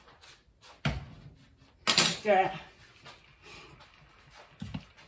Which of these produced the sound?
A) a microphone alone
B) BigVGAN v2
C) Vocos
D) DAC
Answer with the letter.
A